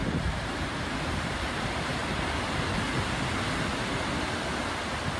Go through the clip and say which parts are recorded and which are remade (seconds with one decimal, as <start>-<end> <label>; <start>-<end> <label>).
0.0-2.0 remade; 2.0-5.2 recorded